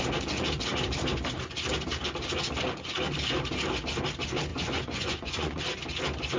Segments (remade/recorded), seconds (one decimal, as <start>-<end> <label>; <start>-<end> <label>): 0.0-4.5 recorded; 4.5-5.6 remade; 5.6-6.4 recorded